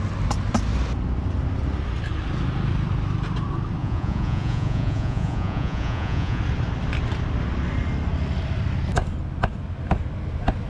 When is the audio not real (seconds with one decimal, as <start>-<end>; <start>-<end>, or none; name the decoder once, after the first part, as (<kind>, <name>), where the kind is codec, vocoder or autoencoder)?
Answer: 3.8-6.4 (vocoder, Vocos)